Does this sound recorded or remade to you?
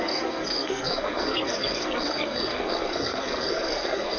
remade